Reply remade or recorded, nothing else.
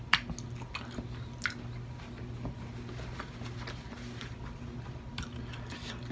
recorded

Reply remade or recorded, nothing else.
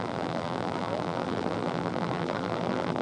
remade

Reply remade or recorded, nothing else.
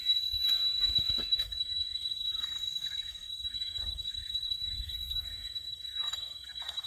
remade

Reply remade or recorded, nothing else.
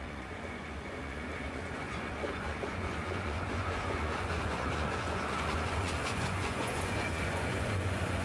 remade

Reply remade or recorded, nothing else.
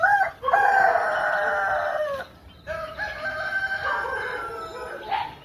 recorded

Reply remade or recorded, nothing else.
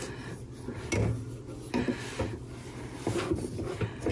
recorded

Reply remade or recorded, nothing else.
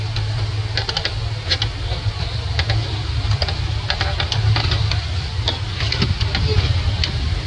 recorded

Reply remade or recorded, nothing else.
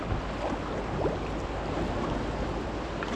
recorded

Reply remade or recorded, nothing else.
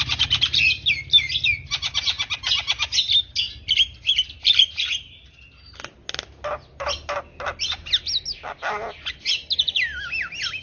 recorded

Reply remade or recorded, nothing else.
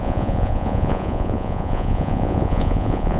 remade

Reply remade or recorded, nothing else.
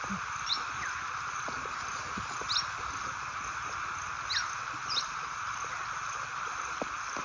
recorded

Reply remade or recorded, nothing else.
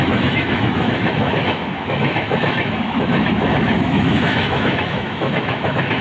remade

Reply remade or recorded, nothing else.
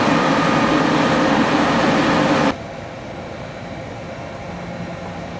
recorded